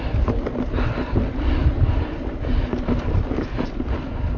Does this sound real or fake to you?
real